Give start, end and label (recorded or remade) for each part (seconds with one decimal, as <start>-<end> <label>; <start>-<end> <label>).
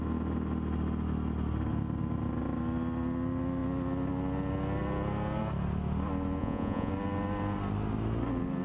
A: 0.0-6.4 recorded; 6.4-6.9 remade; 6.9-8.6 recorded